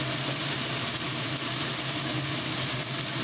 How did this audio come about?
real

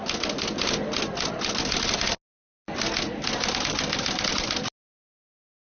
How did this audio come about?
real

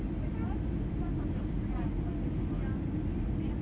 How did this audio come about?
real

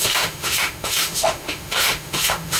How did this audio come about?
fake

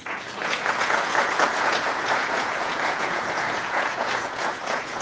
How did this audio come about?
fake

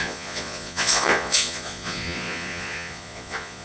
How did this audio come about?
fake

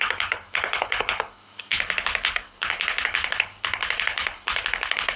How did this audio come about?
fake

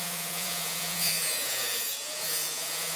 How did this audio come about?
fake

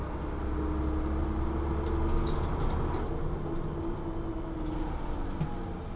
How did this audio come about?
real